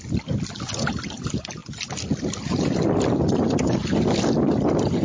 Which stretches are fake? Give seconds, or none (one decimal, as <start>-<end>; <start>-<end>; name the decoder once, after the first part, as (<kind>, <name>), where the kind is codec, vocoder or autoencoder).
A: none